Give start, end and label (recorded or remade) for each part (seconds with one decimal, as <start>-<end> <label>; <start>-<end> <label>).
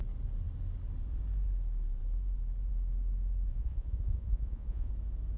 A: 0.0-3.5 recorded; 3.5-4.9 remade; 4.9-5.4 recorded